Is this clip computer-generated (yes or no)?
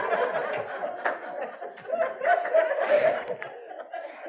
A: no